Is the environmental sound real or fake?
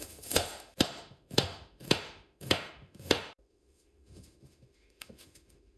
fake